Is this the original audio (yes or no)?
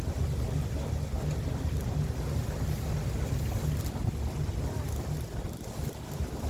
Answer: yes